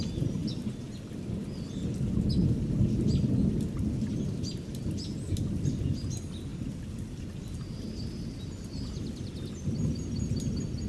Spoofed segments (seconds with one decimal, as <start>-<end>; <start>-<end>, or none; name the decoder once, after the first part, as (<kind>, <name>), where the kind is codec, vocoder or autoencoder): none